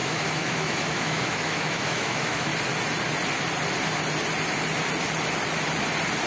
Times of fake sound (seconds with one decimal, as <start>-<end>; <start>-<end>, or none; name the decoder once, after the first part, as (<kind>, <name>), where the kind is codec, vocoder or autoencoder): 0.0-2.5 (autoencoder, DAC-VAE)